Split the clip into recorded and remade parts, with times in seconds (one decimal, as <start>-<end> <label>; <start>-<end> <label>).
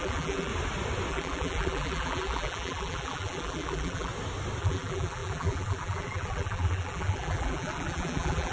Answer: 0.0-0.5 remade; 0.5-1.1 recorded; 1.1-4.1 remade; 4.1-4.6 recorded; 4.6-8.5 remade